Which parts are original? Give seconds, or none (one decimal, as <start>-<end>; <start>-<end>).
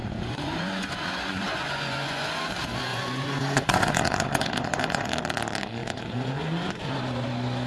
2.4-2.9; 5.1-5.8; 6.8-7.7